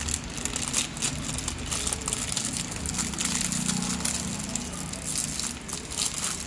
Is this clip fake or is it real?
real